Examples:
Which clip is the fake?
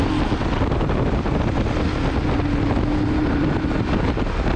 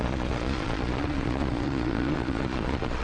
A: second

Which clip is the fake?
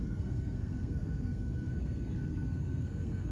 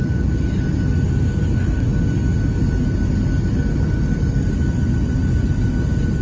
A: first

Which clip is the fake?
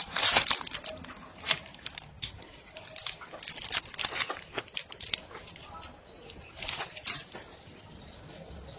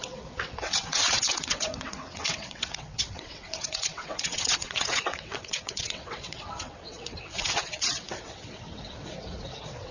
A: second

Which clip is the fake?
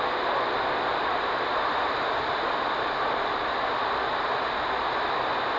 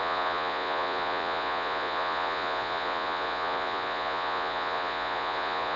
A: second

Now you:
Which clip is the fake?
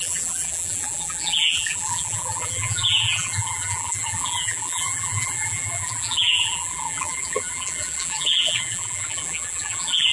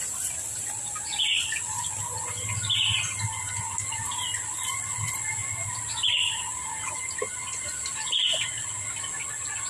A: first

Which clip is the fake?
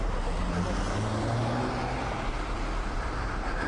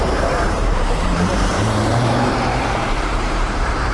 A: second